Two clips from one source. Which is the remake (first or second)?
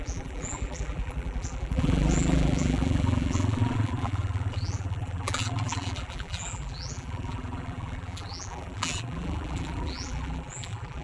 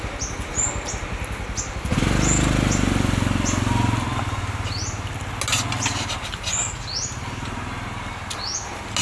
first